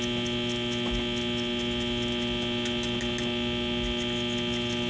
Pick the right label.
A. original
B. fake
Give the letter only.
A